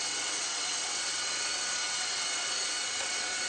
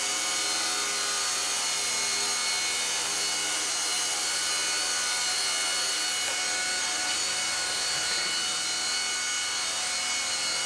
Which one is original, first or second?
second